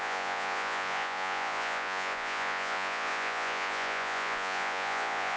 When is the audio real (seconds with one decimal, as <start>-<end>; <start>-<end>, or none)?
none